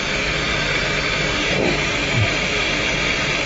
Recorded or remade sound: recorded